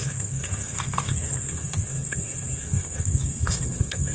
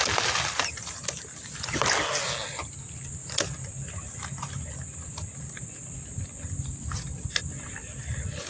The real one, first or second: second